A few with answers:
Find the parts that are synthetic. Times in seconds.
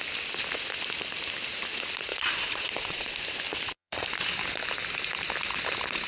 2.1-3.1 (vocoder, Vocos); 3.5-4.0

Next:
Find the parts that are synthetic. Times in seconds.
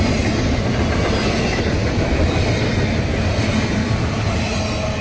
none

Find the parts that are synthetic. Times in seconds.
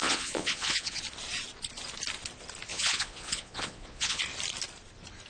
0.0-1.0 (vocoder, Vocos); 2.7-4.2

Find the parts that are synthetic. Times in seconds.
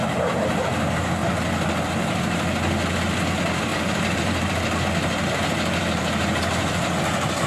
3.7-4.5 (vocoder, BigVGAN v2); 5.2-6.4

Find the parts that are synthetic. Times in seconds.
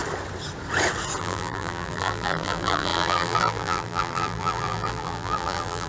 1.2-5.9 (vocoder, BigVGAN v2)